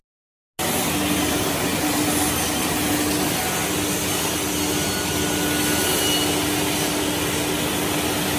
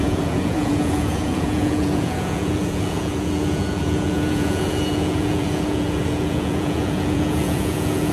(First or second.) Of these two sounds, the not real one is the second